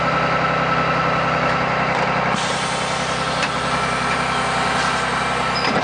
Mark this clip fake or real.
real